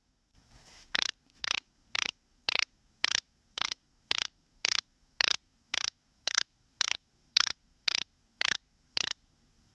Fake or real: fake